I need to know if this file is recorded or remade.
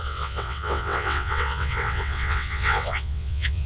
remade